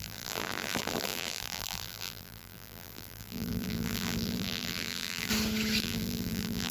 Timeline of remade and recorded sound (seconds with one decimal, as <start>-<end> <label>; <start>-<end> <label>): 0.0-5.3 remade; 5.3-5.8 recorded; 5.8-6.7 remade